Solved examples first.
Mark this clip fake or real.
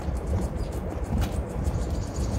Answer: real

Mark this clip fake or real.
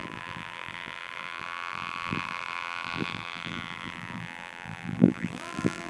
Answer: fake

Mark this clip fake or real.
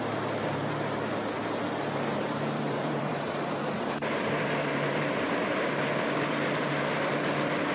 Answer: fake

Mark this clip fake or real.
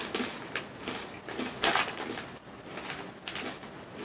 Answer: real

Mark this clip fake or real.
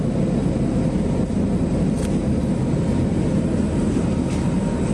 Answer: real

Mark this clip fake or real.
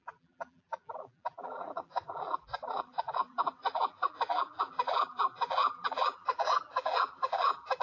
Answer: fake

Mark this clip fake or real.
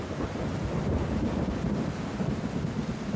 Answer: real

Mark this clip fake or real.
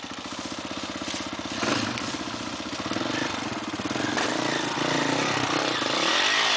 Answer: real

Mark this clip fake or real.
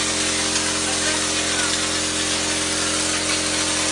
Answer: real